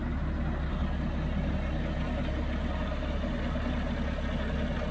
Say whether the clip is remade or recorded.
recorded